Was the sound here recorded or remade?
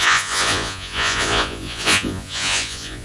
remade